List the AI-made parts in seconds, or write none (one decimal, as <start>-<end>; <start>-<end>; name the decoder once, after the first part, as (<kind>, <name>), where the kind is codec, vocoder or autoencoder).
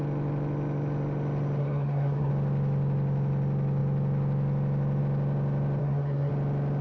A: 1.6-2.3 (codec, SNAC); 5.8-6.3